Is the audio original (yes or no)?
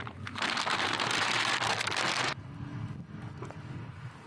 yes